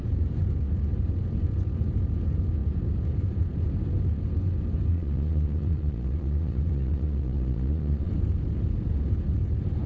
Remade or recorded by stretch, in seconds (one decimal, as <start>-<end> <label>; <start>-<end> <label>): 0.0-4.9 recorded; 4.9-8.1 remade; 8.1-9.9 recorded